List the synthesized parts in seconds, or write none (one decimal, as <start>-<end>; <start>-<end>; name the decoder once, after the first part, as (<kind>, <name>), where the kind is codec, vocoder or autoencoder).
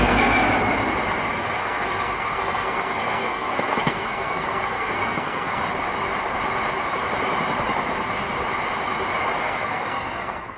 0.0-0.4 (codec, SNAC); 1.3-5.6; 9.4-10.6